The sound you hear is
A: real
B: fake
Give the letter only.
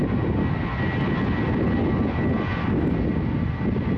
A